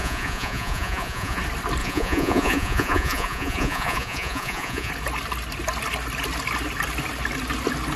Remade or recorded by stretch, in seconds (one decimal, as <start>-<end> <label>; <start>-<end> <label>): 0.0-1.4 remade; 1.4-1.8 recorded; 1.8-4.9 remade; 4.9-8.0 recorded